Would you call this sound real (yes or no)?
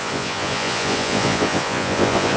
no